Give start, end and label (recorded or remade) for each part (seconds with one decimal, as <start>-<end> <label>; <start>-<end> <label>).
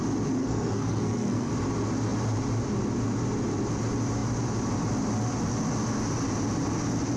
0.0-0.4 recorded; 0.4-1.5 remade; 1.5-7.2 recorded